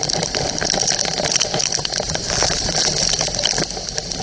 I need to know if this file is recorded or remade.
recorded